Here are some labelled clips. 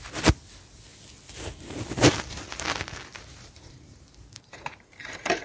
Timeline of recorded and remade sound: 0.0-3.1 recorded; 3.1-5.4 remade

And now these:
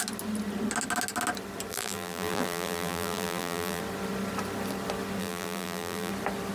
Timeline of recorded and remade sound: 0.0-1.7 recorded; 1.7-3.8 remade; 3.8-5.2 recorded; 5.2-6.1 remade; 6.1-6.5 recorded

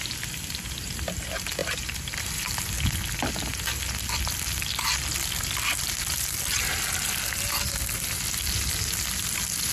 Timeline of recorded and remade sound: 0.0-9.7 recorded

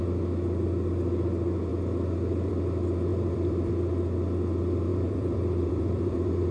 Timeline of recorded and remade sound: 0.0-3.1 recorded; 3.1-3.7 remade; 3.7-4.9 recorded; 4.9-6.5 remade

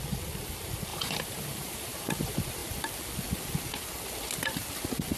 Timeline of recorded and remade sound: 0.0-0.9 recorded; 0.9-2.2 remade; 2.2-5.2 recorded

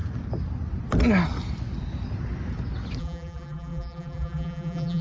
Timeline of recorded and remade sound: 0.0-3.0 recorded; 3.0-5.0 remade

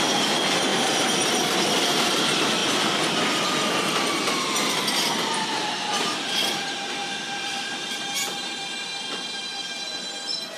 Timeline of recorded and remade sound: 0.0-0.7 recorded; 0.7-1.3 remade; 1.3-5.9 recorded; 5.9-10.0 remade; 10.0-10.6 recorded